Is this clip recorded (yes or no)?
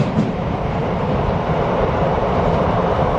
no